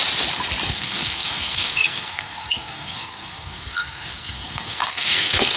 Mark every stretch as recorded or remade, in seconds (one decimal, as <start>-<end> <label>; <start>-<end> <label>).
0.0-0.7 recorded; 0.7-5.6 remade